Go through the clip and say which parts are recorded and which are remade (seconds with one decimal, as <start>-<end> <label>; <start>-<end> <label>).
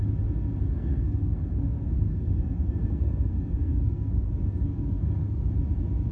0.0-0.6 recorded; 0.6-4.3 remade; 4.3-4.7 recorded; 4.7-5.5 remade; 5.5-6.1 recorded